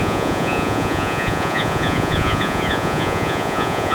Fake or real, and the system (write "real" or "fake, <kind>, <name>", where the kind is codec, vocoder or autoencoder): fake, vocoder, Vocos